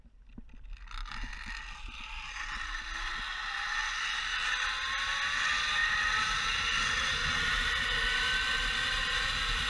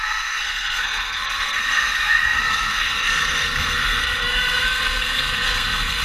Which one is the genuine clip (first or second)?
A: first